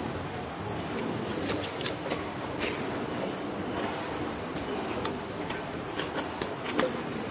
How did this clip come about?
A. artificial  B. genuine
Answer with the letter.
B